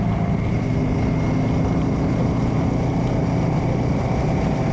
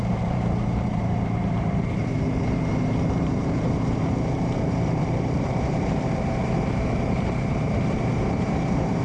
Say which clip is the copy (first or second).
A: second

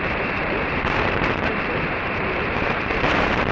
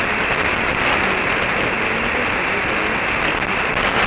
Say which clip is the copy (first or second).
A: first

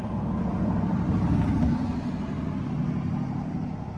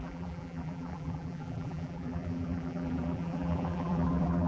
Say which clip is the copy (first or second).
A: second